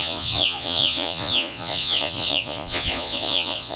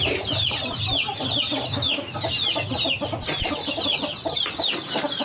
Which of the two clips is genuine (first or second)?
second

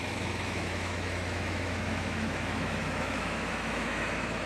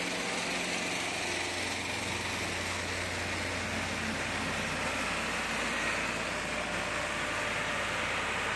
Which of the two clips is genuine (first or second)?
second